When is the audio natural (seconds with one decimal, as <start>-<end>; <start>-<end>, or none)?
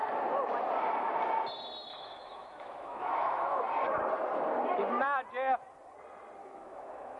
0.0-1.9; 3.6-6.4